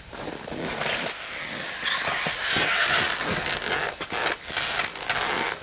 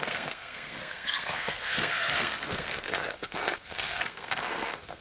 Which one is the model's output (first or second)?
second